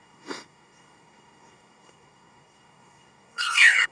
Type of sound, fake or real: fake